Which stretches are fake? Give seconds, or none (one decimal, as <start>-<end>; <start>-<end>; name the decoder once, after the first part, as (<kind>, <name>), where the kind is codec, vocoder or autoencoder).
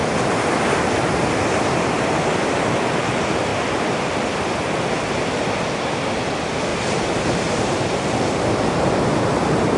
3.5-4.1 (vocoder, BigVGAN v2); 6.7-9.0